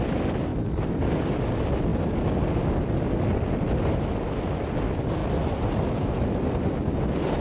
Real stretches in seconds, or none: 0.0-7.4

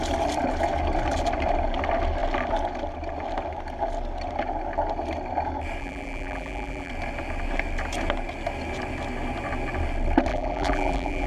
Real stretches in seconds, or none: 0.0-5.8; 6.9-10.3

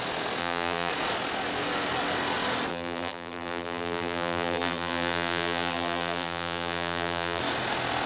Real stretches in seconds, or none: 0.0-0.4; 0.9-2.7; 7.4-8.1

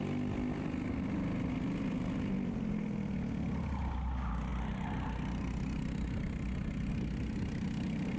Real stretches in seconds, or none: 0.0-8.2

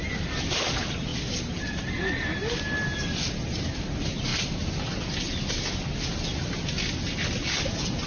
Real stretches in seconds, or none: 0.0-8.1

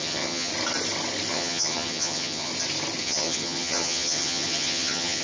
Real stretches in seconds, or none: 0.5-1.3; 2.5-3.0